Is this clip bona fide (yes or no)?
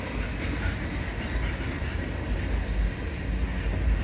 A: yes